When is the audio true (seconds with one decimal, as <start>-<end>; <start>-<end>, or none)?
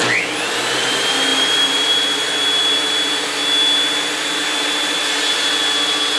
0.0-1.3; 2.3-6.2